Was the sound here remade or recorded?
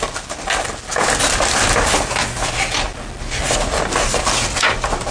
recorded